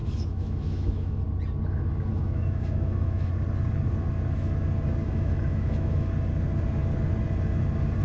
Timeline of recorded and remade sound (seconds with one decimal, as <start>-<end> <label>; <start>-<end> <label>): 0.0-1.2 remade; 1.2-2.1 recorded; 2.1-3.3 remade; 3.3-5.0 recorded; 5.0-6.1 remade; 6.1-8.0 recorded